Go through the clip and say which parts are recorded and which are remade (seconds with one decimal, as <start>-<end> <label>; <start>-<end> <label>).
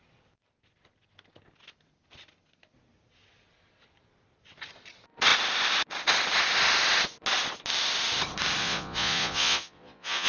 0.0-8.6 recorded; 8.6-10.3 remade